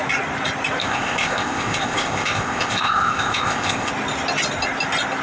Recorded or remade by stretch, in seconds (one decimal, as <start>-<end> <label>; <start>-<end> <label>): 0.0-0.8 recorded; 0.8-3.9 remade; 3.9-5.2 recorded